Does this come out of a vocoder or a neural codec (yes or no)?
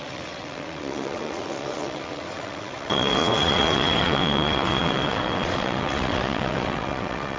yes